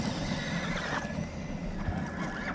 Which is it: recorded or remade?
recorded